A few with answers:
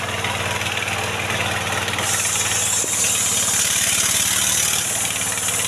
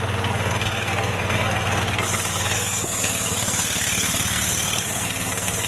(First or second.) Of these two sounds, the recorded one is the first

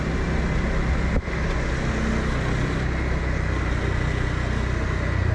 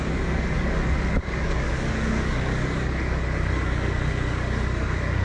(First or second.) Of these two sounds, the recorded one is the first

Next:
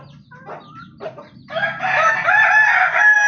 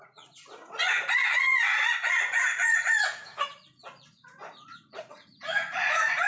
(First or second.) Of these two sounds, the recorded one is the first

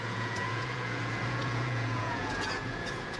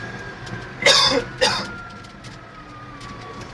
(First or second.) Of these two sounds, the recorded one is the second